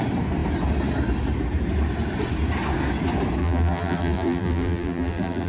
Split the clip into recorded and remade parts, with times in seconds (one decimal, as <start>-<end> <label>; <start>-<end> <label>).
0.0-3.4 recorded; 3.4-5.5 remade